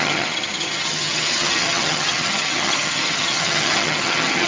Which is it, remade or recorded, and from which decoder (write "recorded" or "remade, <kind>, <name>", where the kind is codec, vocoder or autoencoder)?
remade, vocoder, HiFi-GAN